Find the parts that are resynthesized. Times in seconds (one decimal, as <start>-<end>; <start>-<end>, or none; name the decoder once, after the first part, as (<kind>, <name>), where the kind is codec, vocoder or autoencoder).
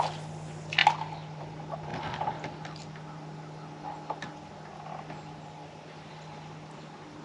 none